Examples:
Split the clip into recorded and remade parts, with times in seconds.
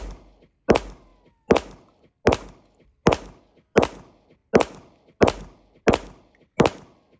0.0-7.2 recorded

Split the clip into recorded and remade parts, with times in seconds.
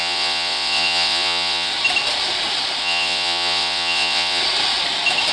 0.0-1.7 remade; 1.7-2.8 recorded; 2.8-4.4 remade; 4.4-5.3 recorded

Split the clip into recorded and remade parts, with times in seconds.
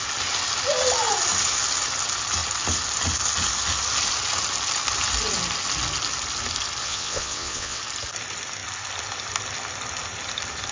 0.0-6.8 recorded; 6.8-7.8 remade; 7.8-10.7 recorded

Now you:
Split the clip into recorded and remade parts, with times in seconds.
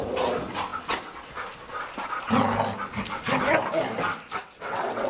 0.0-4.4 recorded; 4.4-5.1 remade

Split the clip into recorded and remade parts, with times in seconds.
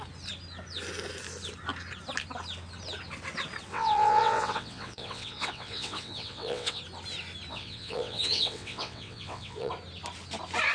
0.0-3.7 recorded; 3.7-6.8 remade; 6.8-7.5 recorded; 7.5-9.7 remade; 9.7-10.7 recorded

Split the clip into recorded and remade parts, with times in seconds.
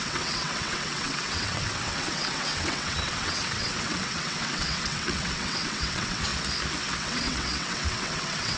0.0-6.3 remade; 6.3-6.9 recorded; 6.9-8.6 remade